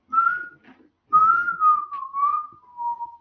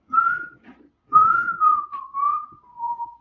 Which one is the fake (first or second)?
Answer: second